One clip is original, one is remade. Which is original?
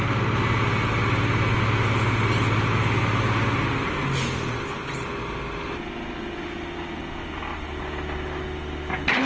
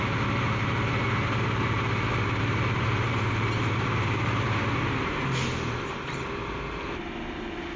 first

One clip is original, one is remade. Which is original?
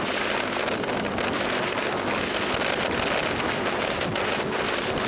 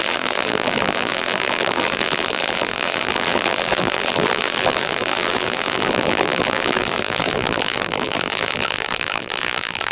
first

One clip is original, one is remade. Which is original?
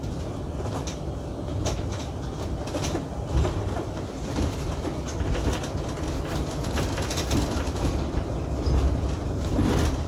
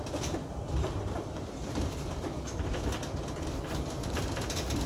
first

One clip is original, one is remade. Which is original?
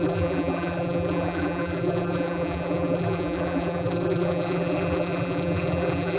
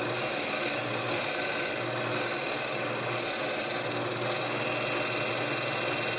second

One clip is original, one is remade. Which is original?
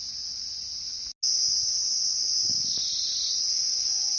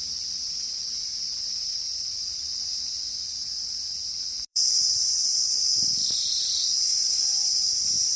first